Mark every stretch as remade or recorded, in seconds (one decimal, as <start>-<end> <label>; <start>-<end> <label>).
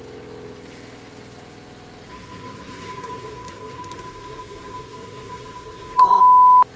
0.0-2.1 recorded; 2.1-6.2 remade; 6.2-6.8 recorded